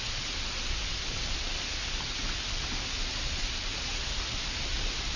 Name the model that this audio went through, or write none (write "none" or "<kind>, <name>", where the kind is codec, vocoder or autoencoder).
none